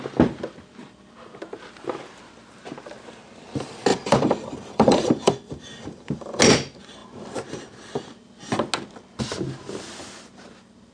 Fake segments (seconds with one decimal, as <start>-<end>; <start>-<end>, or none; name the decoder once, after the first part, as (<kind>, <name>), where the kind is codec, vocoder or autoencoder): 3.9-6.4 (vocoder, BigVGAN v2)